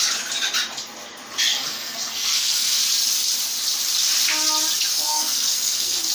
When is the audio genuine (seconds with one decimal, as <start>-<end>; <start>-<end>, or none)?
0.0-1.5; 2.8-4.9